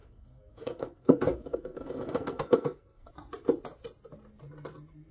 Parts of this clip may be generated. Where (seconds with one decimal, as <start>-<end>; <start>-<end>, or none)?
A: 0.0-3.1